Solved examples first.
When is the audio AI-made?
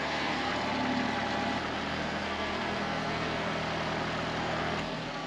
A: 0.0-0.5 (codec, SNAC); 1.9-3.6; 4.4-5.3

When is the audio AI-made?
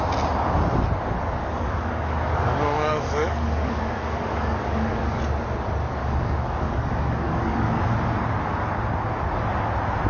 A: 1.4-5.2 (codec, DAC); 6.0-7.8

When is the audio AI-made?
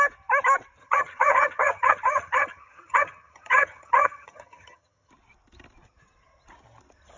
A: 0.8-5.1 (vocoder, HiFi-GAN)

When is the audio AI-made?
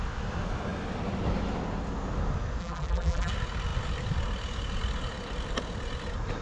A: 2.6-3.3 (vocoder, BigVGAN v2)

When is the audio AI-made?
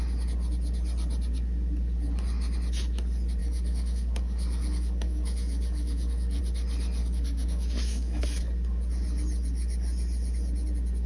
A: 3.4-6.4 (codec, DAC); 7.0-8.2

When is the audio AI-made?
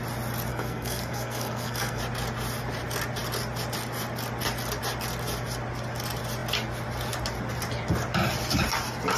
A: 0.5-2.0 (codec, SNAC)